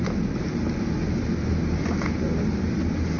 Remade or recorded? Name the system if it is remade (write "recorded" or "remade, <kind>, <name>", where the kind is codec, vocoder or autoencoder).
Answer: recorded